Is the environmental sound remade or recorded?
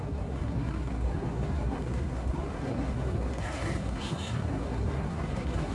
remade